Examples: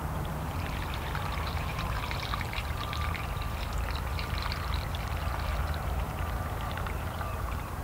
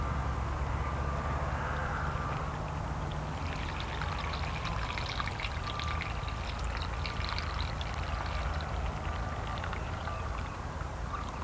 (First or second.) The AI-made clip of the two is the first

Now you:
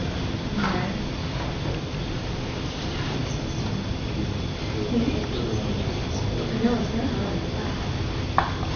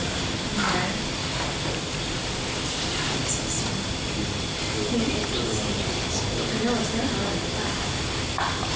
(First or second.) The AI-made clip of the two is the second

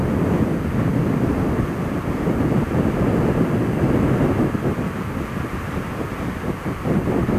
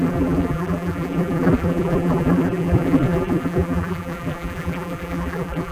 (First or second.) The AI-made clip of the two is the second